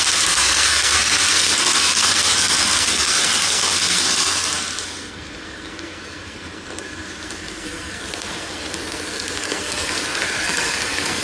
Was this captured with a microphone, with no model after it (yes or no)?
no